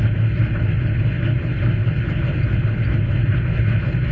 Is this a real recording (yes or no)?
yes